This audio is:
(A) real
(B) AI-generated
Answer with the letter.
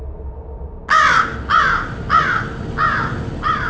A